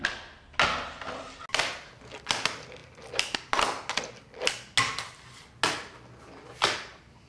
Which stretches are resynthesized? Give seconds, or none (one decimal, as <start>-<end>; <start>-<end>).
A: none